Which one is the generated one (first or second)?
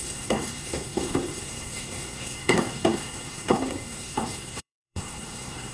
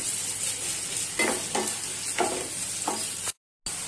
first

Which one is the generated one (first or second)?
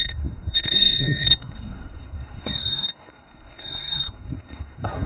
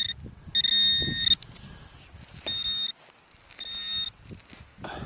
first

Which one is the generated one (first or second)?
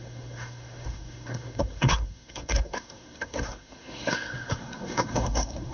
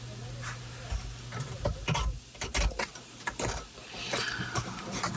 first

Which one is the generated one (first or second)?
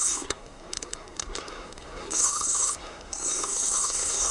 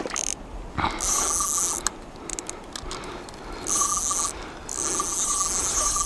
first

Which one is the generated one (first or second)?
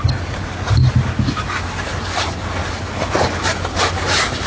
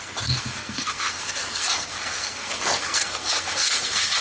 second